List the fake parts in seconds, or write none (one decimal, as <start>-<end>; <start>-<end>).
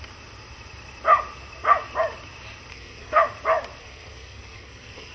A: 2.7-3.2; 3.8-5.1